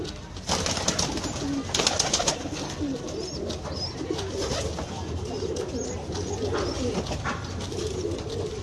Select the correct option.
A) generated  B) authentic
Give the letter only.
B